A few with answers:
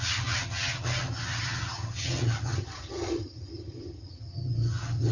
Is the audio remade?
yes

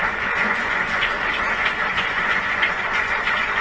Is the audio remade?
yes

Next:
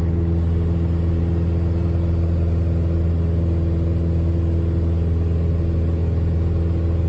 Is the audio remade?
no